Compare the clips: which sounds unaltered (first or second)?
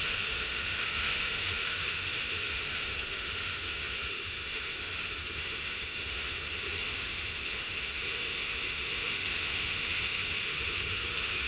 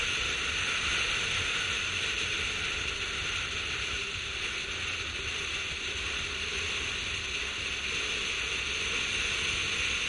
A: second